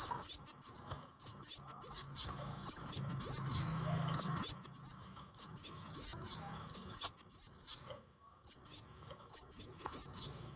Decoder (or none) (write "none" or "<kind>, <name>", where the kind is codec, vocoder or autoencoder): autoencoder, DAC-VAE